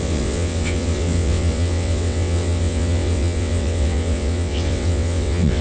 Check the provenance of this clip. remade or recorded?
remade